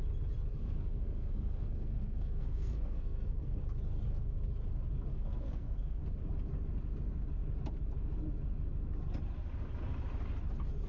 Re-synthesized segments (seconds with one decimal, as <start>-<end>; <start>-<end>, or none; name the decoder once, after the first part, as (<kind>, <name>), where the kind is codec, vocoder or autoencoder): 0.5-3.6 (codec, SNAC); 5.1-6.0